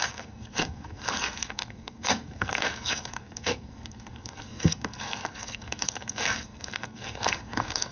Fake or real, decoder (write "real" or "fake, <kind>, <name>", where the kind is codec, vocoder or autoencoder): fake, codec, SNAC